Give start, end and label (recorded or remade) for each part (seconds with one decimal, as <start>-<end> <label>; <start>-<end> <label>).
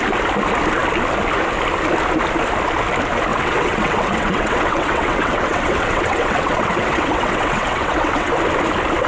0.0-3.3 recorded; 3.3-8.3 remade; 8.3-9.1 recorded